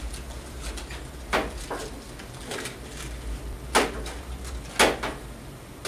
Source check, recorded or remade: recorded